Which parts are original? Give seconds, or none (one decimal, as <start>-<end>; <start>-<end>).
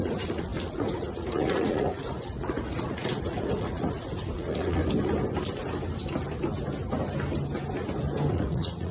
4.8-8.3